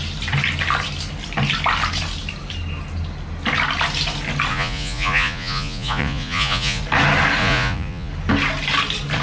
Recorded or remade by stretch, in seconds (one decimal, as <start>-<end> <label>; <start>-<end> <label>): 0.0-4.5 recorded; 4.5-6.8 remade; 6.8-7.4 recorded; 7.4-8.1 remade; 8.1-9.2 recorded